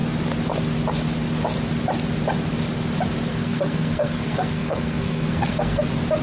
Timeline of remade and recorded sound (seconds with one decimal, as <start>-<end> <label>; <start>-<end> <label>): 0.0-3.3 recorded; 3.3-5.8 remade; 5.8-6.2 recorded